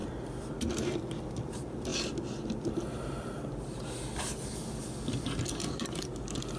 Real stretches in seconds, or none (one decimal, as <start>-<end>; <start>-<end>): 0.0-6.6